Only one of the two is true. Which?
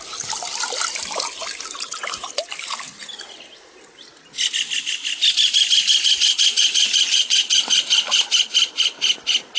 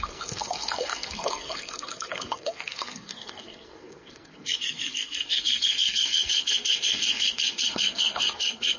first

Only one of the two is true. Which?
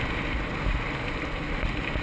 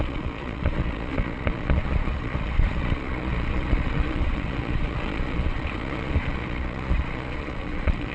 first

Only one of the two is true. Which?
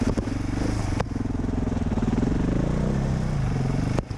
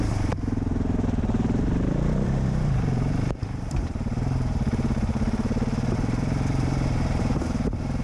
first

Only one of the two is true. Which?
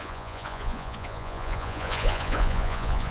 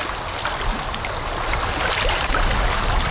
second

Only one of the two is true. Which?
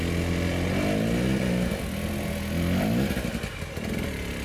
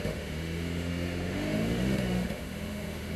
first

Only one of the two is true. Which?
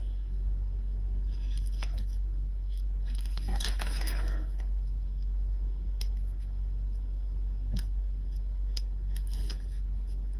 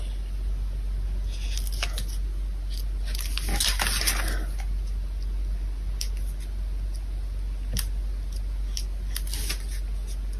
second